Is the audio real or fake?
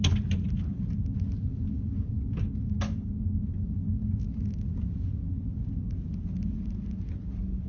real